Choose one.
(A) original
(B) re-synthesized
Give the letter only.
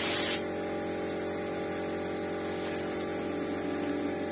A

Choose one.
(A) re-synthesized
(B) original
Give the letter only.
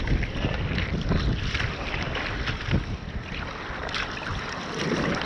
B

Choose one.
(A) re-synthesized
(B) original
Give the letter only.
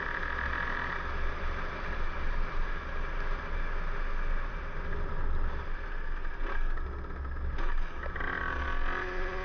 B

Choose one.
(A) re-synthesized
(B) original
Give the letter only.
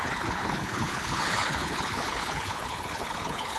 A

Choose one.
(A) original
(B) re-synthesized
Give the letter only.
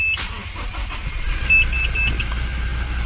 A